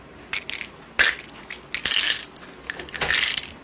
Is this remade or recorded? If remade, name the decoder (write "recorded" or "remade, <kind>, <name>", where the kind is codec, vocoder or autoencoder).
recorded